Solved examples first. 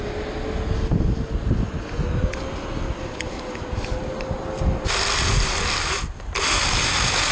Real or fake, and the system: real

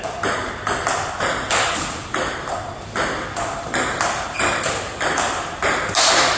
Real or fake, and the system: real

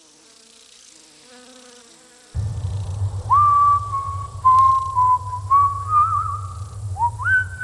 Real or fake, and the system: real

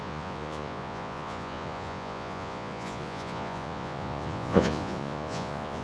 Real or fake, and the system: fake, vocoder, Vocos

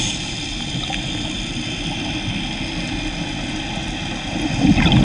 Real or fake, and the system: real